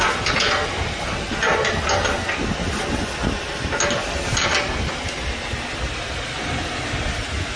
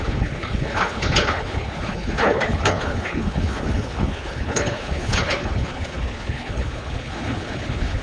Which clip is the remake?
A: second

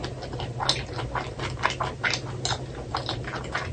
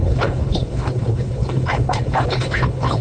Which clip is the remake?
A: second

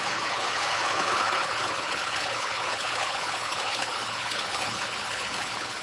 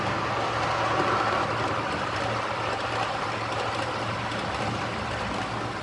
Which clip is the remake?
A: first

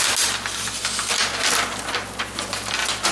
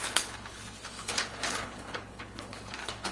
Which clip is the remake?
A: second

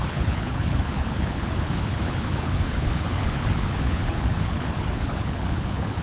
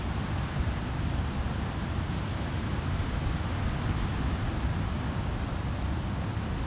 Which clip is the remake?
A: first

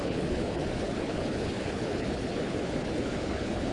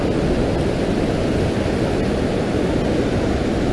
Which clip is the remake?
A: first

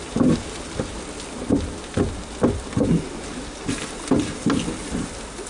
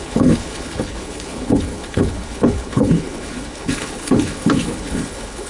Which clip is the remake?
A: second